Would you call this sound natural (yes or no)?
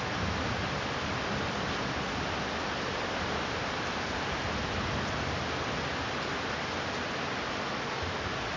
yes